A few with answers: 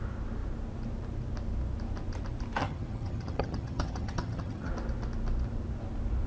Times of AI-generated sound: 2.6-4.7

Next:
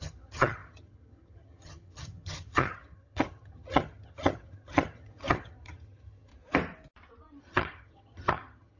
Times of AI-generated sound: 0.0-6.3; 7.4-8.8

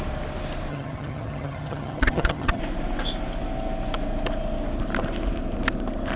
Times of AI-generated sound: 0.7-2.6

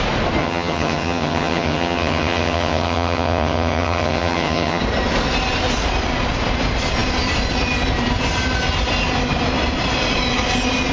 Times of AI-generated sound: 0.4-4.8

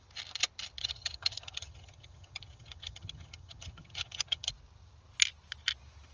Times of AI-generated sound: 0.8-4.5

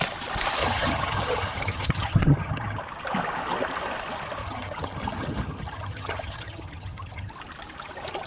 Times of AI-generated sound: 0.6-2.8; 4.4-7.3

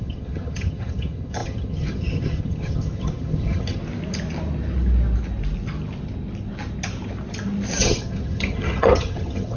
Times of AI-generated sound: 0.0-3.8; 7.8-9.6